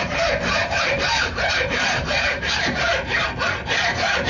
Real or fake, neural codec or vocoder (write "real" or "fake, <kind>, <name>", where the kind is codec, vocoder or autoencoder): fake, vocoder, BigVGAN v2